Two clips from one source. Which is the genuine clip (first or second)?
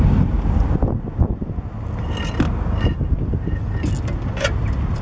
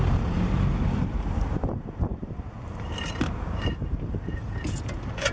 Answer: first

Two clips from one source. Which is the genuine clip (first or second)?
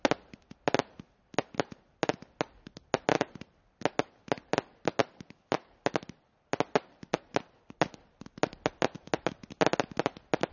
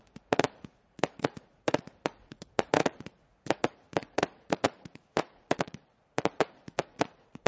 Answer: first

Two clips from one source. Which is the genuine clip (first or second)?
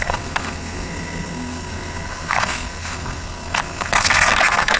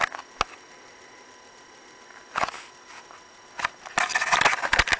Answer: second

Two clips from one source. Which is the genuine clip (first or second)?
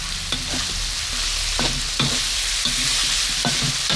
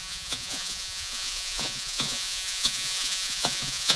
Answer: first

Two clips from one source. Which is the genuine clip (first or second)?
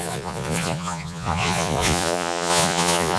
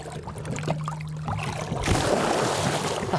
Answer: second